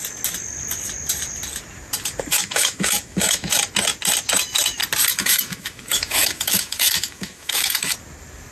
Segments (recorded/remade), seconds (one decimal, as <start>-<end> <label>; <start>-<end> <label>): 0.0-2.3 recorded; 2.3-3.6 remade; 3.6-5.1 recorded; 5.1-8.0 remade; 8.0-8.5 recorded